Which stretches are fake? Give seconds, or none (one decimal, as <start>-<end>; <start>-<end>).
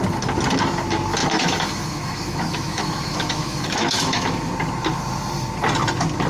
1.2-4.5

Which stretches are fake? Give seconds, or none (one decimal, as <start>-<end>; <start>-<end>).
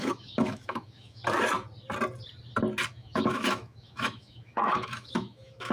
0.0-1.2; 2.9-5.7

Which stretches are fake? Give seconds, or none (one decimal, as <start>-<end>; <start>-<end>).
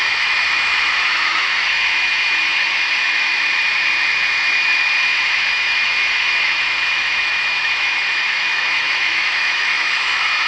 0.0-3.3; 4.5-10.5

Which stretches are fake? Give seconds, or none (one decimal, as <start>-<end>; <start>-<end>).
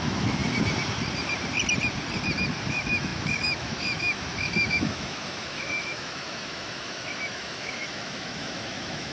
0.0-0.4; 2.7-9.1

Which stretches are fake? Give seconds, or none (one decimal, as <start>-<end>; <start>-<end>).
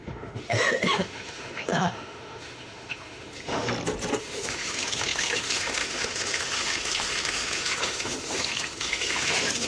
0.0-3.7; 4.2-9.7